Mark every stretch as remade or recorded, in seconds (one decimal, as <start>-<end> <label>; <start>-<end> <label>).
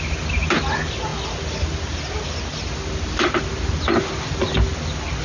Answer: 0.0-5.2 recorded